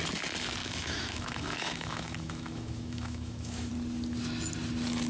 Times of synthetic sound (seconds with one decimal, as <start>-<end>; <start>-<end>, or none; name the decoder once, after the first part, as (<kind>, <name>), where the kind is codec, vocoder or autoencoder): 0.6-3.7 (autoencoder, DAC-VAE)